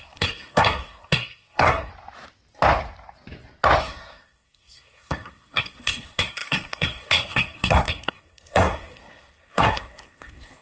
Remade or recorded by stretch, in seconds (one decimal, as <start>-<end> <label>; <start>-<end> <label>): 0.0-1.9 remade; 1.9-3.8 recorded; 3.8-10.6 remade